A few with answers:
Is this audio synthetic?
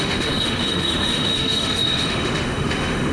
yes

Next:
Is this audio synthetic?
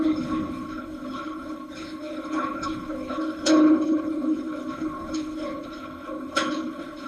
yes